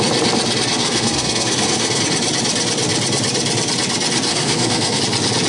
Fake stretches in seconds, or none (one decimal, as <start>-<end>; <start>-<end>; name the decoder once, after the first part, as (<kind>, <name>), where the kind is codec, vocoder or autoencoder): 0.8-2.0 (codec, SNAC); 4.3-5.0